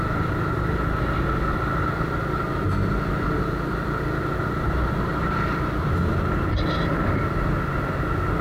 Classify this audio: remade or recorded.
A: recorded